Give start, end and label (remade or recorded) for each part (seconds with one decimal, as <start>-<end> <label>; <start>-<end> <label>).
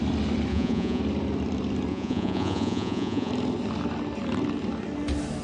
0.0-0.5 recorded; 0.5-1.0 remade; 1.0-1.9 recorded; 1.9-3.3 remade; 3.3-5.4 recorded